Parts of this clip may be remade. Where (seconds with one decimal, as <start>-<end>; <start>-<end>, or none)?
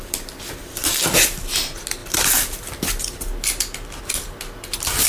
none